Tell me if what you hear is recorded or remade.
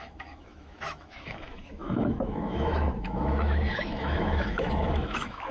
remade